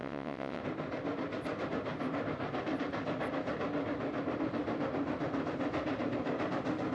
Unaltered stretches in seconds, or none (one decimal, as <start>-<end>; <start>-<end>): 0.6-6.9